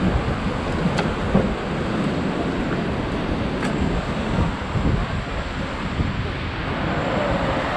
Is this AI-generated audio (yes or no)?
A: no